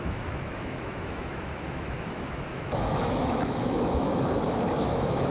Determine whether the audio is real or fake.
fake